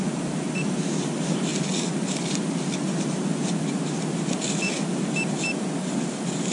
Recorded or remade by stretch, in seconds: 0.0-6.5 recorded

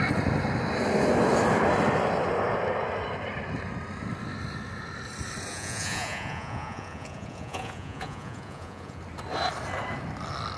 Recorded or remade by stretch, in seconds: 0.0-5.5 recorded; 5.5-9.0 remade; 9.0-10.6 recorded

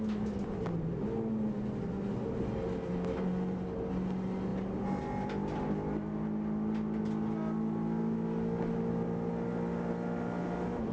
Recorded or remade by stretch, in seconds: 0.0-10.9 recorded

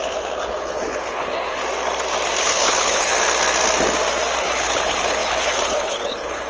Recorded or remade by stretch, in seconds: 0.0-1.6 remade; 1.6-2.4 recorded; 2.4-3.1 remade; 3.1-4.4 recorded; 4.4-6.5 remade